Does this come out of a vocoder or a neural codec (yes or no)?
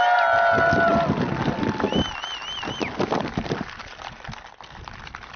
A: no